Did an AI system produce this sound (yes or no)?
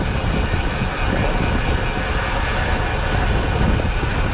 no